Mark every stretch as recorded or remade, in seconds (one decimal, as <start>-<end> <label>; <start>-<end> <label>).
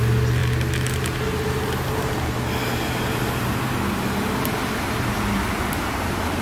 0.0-6.4 recorded